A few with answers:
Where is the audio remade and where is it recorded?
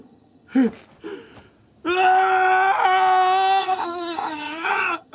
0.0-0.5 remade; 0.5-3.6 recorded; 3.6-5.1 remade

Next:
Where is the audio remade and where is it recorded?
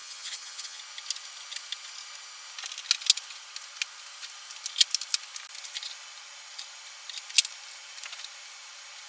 0.0-0.8 remade; 0.8-9.1 recorded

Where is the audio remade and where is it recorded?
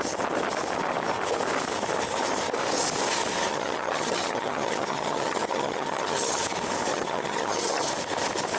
0.0-3.5 recorded; 3.5-6.4 remade; 6.4-6.9 recorded; 6.9-7.9 remade; 7.9-8.6 recorded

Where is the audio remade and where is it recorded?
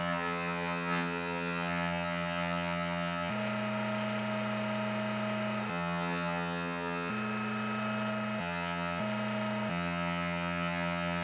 0.0-3.3 remade; 3.3-5.7 recorded; 5.7-7.1 remade; 7.1-8.4 recorded; 8.4-9.0 remade; 9.0-9.7 recorded; 9.7-11.2 remade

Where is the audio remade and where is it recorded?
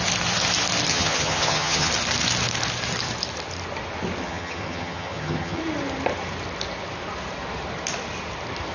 0.0-0.9 recorded; 0.9-1.9 remade; 1.9-4.2 recorded; 4.2-5.6 remade; 5.6-8.7 recorded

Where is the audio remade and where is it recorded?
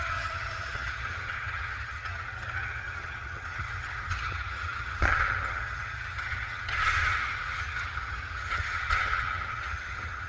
0.0-10.3 remade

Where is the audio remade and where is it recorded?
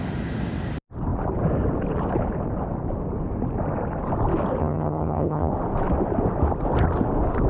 0.0-4.6 recorded; 4.6-5.5 remade; 5.5-7.5 recorded